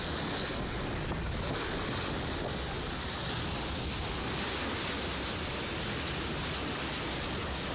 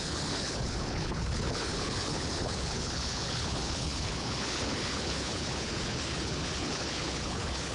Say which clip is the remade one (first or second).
second